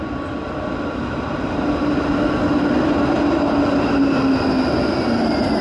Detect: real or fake real